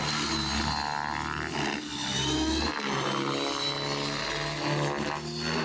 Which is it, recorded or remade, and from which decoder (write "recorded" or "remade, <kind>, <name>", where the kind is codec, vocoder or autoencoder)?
recorded